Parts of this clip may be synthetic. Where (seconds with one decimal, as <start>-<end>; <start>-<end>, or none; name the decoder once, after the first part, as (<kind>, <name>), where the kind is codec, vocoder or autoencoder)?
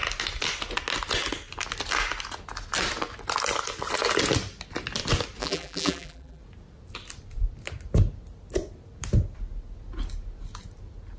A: 5.4-6.4 (vocoder, BigVGAN v2)